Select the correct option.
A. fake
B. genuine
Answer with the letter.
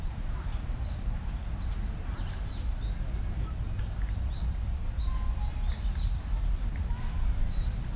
B